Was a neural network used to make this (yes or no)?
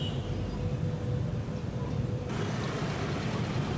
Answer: yes